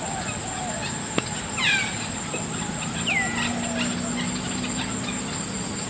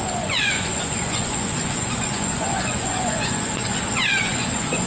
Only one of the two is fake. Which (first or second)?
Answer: second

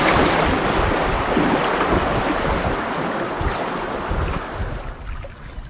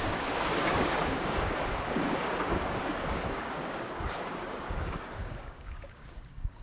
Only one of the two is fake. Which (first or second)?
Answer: second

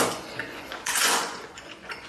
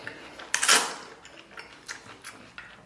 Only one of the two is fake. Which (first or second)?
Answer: first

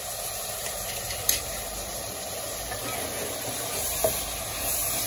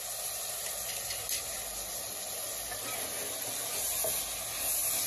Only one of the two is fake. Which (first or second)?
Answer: first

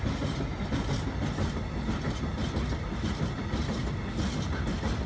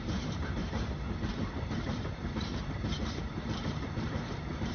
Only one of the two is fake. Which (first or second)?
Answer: second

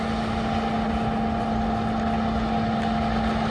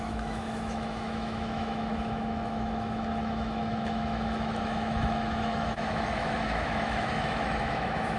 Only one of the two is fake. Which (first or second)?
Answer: second